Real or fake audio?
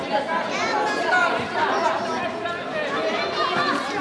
real